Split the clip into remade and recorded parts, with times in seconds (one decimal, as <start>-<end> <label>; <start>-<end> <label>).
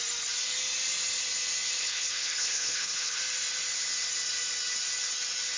0.0-1.8 recorded; 1.8-3.2 remade; 3.2-5.6 recorded